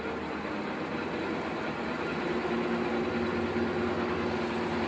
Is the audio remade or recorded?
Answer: recorded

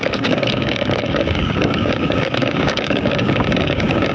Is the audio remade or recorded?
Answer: remade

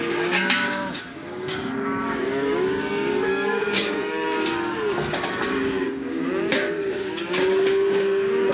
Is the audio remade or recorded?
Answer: remade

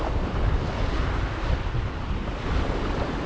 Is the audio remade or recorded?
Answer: recorded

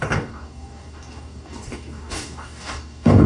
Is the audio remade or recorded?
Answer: remade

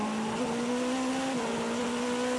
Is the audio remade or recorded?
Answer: recorded